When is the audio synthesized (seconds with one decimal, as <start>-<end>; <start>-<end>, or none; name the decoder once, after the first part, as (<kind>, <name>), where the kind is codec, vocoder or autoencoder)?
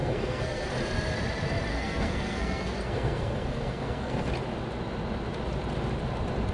0.0-0.7 (codec, SNAC); 1.7-4.3